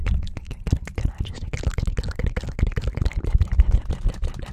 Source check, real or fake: real